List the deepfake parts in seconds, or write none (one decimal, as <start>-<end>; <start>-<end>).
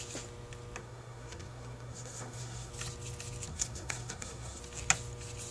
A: 0.8-2.7; 3.5-4.6